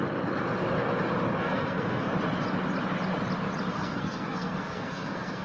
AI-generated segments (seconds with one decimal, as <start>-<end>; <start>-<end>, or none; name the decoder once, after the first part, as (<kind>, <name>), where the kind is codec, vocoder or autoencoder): 1.4-2.1 (codec, SNAC); 3.7-5.4